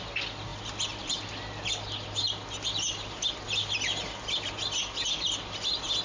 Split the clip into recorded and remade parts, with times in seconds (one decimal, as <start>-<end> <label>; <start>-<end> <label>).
0.0-6.0 recorded